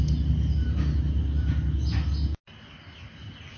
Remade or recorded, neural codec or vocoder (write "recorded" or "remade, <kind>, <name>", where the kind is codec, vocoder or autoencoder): recorded